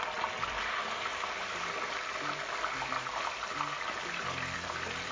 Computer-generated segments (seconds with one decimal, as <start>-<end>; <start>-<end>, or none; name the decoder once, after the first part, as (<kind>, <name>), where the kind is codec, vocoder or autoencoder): 0.0-1.1 (vocoder, BigVGAN v2); 4.2-5.1